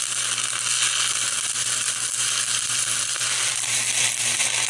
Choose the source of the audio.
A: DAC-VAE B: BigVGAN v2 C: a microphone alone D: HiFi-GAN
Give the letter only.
C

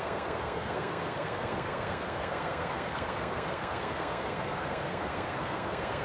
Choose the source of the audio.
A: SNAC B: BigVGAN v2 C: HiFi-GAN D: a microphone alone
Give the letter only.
A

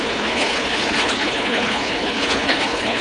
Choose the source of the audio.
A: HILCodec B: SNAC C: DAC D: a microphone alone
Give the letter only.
A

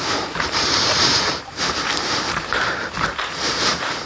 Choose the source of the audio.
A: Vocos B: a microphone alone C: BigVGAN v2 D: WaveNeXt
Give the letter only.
C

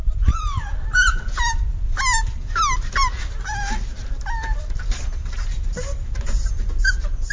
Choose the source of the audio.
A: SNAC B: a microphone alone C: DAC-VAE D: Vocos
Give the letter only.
B